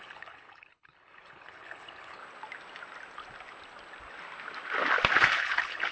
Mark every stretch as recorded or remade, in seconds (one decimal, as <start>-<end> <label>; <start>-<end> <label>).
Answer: 0.0-2.2 remade; 2.2-5.2 recorded; 5.2-5.9 remade